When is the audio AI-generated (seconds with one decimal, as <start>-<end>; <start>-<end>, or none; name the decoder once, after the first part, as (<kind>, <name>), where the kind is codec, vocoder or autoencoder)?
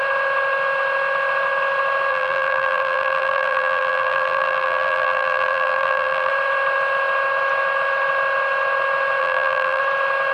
2.1-6.3 (vocoder, BigVGAN v2); 9.2-9.8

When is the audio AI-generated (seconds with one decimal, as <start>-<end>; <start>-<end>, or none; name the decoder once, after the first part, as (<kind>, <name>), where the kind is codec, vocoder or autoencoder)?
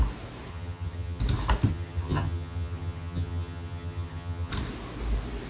0.5-1.2 (vocoder, HiFi-GAN); 1.7-4.5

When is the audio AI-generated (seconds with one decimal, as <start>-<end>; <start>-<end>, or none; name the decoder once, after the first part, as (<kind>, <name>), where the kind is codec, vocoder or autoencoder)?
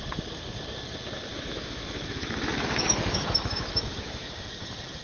1.3-4.3 (autoencoder, DAC-VAE)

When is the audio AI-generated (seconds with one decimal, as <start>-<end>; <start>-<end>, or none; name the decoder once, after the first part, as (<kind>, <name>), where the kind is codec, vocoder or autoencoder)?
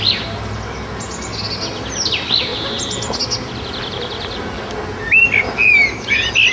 none